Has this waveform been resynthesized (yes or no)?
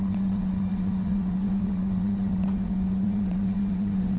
yes